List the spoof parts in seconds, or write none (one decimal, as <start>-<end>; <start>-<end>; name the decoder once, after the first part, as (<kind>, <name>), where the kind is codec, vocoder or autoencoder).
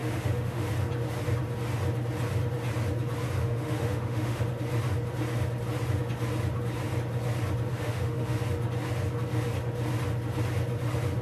0.0-0.7 (autoencoder, DAC-VAE); 3.4-4.4; 7.7-8.4